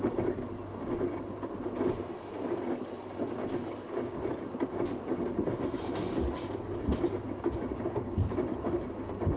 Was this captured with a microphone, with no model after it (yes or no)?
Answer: yes